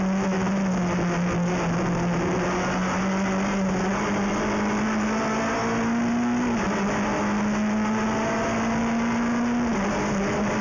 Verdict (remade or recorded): recorded